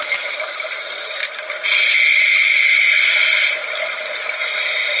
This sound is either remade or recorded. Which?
recorded